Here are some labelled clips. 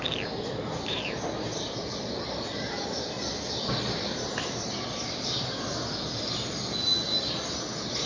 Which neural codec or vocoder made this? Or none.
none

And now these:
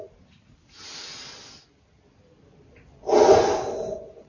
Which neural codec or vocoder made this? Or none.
none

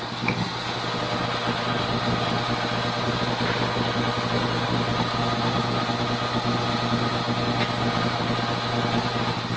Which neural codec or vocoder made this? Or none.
none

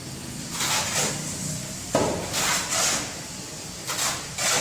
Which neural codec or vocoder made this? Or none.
none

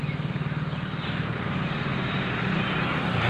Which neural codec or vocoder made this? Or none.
none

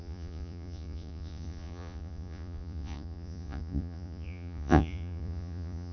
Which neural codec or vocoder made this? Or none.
vocoder, Vocos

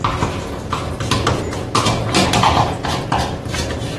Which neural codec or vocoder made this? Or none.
none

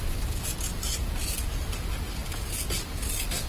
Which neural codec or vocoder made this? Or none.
none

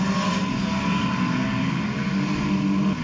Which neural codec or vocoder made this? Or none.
none